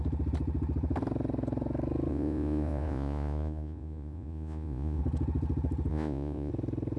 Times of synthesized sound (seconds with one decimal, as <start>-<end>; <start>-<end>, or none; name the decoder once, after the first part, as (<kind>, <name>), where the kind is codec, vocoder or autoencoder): 2.1-5.0 (vocoder, Vocos); 5.9-6.5